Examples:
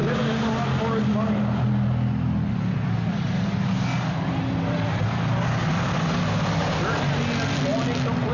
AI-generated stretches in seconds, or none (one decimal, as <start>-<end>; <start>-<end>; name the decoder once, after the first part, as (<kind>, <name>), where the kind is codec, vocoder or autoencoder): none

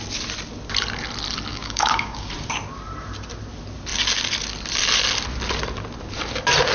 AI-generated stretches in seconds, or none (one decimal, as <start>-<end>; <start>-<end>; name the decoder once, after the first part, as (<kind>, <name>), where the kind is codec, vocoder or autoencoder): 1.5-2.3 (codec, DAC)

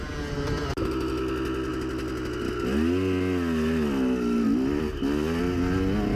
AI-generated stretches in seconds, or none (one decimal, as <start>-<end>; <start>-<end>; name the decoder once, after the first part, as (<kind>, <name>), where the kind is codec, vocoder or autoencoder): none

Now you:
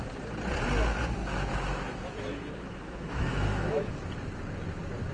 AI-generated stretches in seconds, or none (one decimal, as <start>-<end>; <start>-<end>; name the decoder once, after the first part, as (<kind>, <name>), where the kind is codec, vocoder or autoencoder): 1.2-3.9 (autoencoder, DAC-VAE)

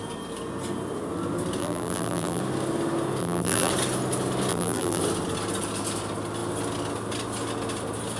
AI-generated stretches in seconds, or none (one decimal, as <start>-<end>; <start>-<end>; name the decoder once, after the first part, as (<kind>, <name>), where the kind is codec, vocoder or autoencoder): 1.6-2.4 (vocoder, BigVGAN v2); 3.2-3.7; 4.5-5.0

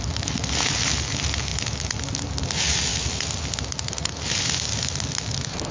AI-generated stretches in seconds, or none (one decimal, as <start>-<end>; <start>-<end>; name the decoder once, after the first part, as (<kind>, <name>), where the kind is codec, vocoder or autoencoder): none